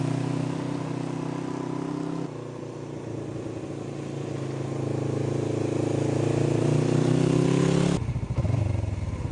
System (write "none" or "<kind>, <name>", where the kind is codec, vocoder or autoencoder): none